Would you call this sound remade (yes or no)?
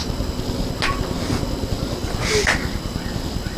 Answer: no